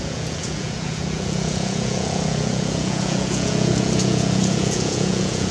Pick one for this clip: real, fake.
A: fake